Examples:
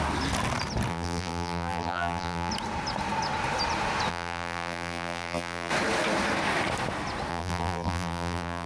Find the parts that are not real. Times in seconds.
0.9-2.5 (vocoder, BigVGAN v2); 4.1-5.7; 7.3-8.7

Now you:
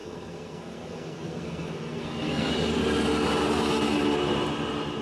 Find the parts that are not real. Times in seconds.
0.0-2.5 (codec, SNAC)

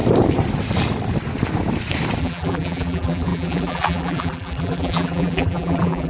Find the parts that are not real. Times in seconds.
2.2-6.1 (vocoder, BigVGAN v2)

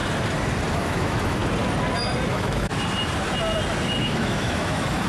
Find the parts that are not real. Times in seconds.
0.7-1.4 (autoencoder, DAC-VAE); 2.3-2.7; 4.0-5.1

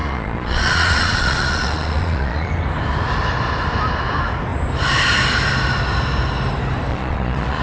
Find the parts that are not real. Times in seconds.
0.0-2.5 (vocoder, Vocos); 6.9-7.6

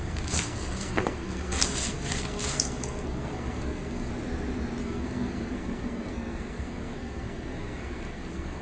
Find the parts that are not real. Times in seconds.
0.0-4.1 (codec, SNAC); 4.8-8.6